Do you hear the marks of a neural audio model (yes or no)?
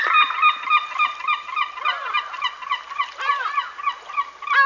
no